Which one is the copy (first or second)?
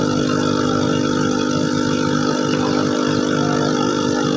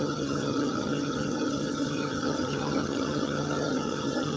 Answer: second